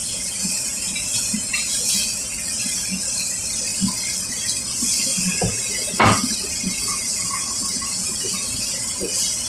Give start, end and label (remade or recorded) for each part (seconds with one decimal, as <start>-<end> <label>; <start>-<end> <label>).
0.0-3.0 remade; 3.0-5.1 recorded; 5.1-9.5 remade